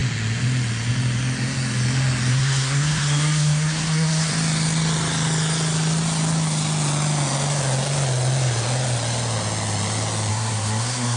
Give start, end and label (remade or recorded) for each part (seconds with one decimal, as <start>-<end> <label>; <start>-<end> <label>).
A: 0.0-2.3 recorded; 2.3-4.3 remade; 4.3-10.3 recorded; 10.3-11.2 remade